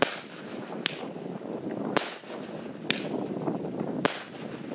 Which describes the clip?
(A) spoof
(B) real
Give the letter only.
A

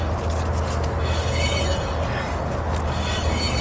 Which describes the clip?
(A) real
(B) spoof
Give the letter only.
A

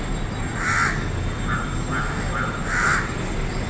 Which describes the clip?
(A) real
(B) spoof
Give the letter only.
A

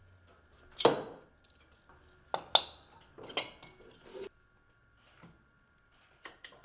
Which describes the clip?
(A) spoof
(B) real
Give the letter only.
B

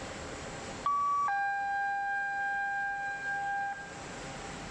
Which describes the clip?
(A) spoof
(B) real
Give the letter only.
B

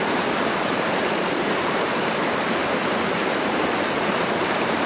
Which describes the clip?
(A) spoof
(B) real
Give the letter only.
A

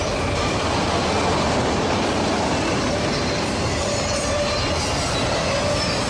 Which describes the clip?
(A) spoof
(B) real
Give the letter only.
B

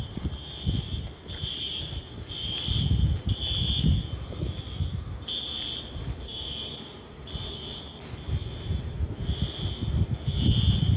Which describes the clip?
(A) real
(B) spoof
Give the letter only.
B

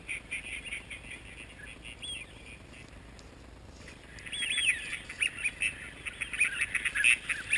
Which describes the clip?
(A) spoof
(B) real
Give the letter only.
B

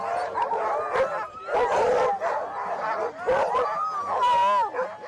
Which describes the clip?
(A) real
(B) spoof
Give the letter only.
A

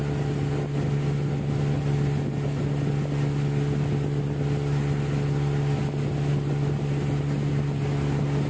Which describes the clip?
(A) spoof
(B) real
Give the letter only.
B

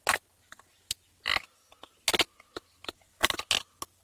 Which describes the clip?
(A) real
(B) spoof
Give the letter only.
A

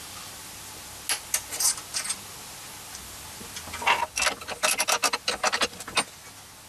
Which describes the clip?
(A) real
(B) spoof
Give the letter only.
A